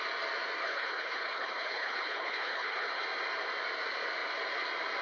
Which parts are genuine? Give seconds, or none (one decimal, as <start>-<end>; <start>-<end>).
0.0-0.6; 3.0-5.0